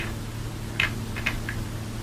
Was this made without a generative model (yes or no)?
yes